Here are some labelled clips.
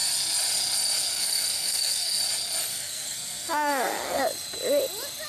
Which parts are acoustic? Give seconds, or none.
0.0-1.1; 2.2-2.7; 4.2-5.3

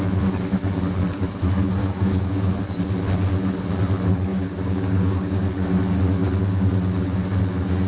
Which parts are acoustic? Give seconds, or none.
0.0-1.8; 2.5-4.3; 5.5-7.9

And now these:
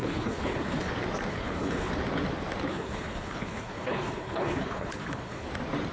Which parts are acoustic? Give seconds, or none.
0.9-1.3; 1.9-2.7; 5.5-5.9

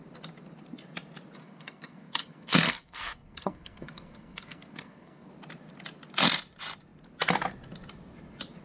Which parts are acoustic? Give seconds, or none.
0.0-1.4; 5.3-8.6

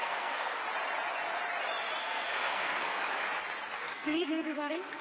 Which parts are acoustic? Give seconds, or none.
0.6-2.0; 3.0-3.8

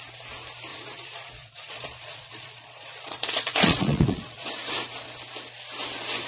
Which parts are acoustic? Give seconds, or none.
0.0-0.7; 4.5-6.3

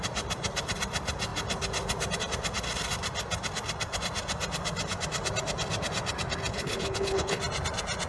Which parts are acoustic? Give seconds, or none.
0.0-6.5; 7.4-8.1

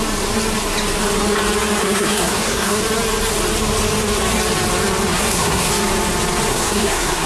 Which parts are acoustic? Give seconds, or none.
0.0-1.8; 2.8-5.1; 5.7-6.5